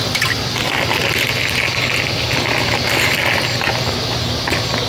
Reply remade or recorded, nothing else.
recorded